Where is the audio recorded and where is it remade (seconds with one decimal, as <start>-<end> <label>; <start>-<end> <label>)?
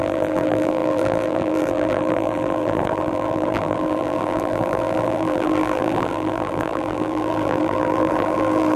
0.0-8.8 remade